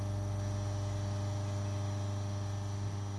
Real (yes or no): yes